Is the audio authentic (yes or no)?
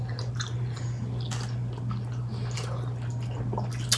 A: yes